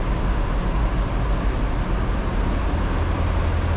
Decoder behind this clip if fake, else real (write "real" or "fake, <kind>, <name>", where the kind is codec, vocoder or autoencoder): real